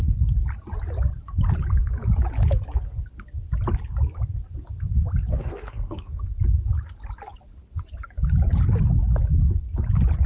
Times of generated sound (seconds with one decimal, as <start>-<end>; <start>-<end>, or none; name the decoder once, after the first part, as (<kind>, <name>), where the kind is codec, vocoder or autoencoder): 5.3-6.4 (codec, SNAC)

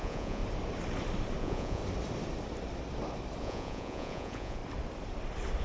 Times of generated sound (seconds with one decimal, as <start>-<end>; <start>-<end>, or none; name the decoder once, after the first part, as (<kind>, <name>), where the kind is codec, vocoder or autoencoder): 0.0-0.4 (vocoder, Vocos); 1.4-1.8; 3.4-4.6

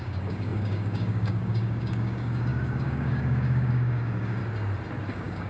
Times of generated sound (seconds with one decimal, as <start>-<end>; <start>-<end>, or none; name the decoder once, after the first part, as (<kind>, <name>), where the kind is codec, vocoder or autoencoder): 0.0-4.4 (codec, DAC); 5.1-5.5

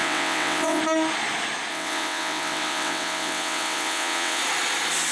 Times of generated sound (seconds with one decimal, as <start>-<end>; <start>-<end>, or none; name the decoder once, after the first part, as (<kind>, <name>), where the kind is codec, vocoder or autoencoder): 0.0-0.8 (vocoder, WaveNeXt); 1.7-4.4